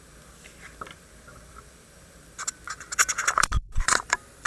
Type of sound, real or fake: fake